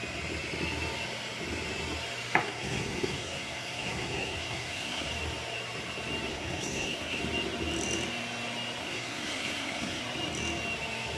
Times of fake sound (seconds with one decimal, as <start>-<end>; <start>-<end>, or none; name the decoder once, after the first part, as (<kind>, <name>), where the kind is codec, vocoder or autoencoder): 2.4-5.1 (codec, SNAC); 6.3-7.2; 8.8-10.0